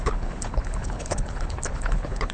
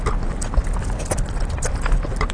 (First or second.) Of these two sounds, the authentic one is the second